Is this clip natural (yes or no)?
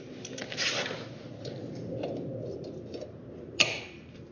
yes